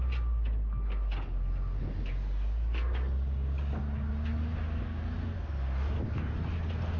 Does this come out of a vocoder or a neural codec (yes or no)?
no